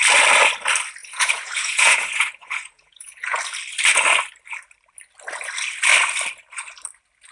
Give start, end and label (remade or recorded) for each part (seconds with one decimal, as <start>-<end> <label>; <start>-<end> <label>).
0.0-1.0 recorded; 1.0-3.4 remade; 3.4-7.3 recorded